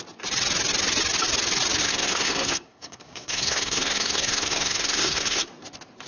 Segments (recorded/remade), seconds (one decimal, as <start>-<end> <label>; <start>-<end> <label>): 0.0-1.8 recorded; 1.8-5.5 remade; 5.5-6.1 recorded